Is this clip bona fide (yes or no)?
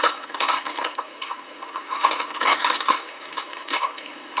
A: no